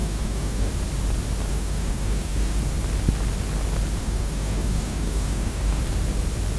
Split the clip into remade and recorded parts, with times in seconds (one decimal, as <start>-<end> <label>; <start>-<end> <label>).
0.0-0.7 remade; 0.7-1.5 recorded; 1.5-2.6 remade; 2.6-4.0 recorded; 4.0-5.8 remade; 5.8-6.6 recorded